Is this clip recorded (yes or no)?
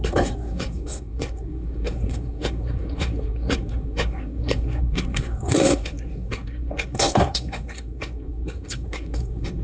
no